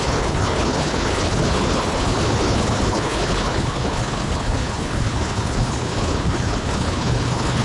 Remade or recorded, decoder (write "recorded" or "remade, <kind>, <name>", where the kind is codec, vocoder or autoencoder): remade, codec, HILCodec